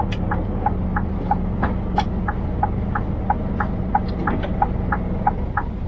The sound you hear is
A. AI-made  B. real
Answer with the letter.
B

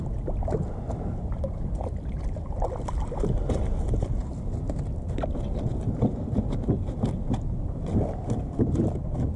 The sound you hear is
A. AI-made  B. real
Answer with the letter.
B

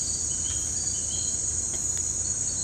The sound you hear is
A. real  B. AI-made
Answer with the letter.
B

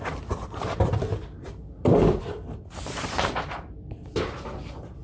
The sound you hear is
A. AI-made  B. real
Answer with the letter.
A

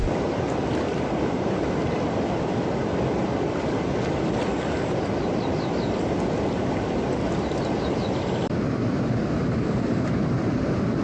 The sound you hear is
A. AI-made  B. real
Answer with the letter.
A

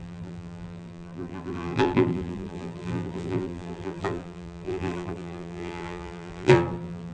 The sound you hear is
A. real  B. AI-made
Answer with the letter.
B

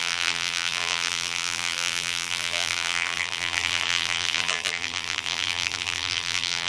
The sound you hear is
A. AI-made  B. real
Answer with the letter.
A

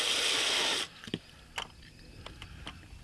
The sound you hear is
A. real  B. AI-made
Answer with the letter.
A